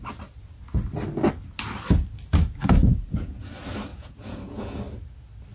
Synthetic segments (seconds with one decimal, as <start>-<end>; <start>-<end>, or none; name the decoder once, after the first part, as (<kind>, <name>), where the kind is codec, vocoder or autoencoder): 2.8-3.4 (vocoder, Vocos); 3.9-4.8

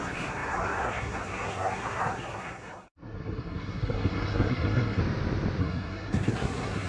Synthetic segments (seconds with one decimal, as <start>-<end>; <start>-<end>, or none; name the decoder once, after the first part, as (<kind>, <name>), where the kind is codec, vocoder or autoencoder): 0.0-5.0 (codec, SNAC); 5.6-6.9